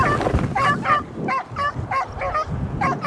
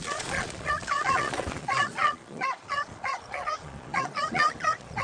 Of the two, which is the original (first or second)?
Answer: first